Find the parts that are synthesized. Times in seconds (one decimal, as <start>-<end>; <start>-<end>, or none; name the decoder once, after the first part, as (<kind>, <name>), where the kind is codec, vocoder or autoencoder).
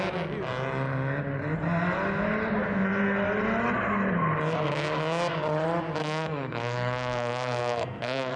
6.0-8.4 (codec, SNAC)